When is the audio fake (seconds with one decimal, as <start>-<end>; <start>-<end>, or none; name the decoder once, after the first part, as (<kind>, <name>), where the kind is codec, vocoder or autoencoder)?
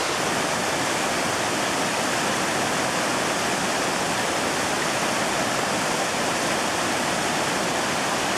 none